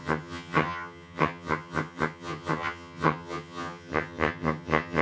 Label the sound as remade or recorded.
remade